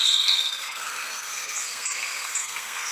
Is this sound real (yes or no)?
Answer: no